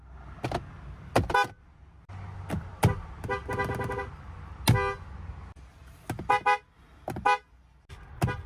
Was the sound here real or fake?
real